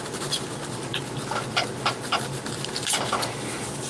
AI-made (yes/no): no